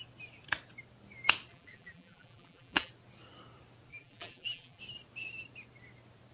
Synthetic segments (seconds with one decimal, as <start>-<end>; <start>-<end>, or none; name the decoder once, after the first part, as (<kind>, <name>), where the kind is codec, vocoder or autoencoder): 1.5-2.9 (vocoder, BigVGAN v2); 3.9-4.8

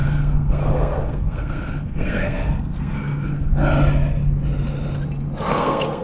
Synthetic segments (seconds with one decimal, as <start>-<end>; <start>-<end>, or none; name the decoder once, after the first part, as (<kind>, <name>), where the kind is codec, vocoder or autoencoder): 0.0-3.5 (codec, SNAC); 5.5-6.0

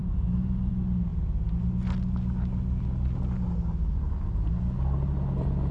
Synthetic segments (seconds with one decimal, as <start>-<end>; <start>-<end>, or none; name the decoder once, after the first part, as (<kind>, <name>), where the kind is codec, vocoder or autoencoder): none